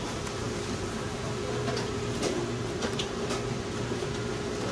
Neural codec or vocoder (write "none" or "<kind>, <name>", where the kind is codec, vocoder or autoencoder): vocoder, BigVGAN v2